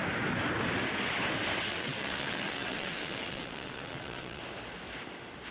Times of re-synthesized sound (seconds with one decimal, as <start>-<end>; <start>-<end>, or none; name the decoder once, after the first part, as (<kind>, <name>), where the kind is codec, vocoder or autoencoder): 1.7-4.4 (vocoder, WaveNeXt)